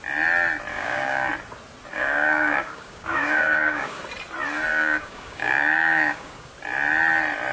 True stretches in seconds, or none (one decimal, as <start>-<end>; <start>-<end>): 0.0-0.7; 1.3-1.9; 4.0-4.7; 6.5-7.5